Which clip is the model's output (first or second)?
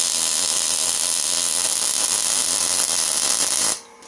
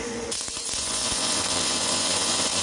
second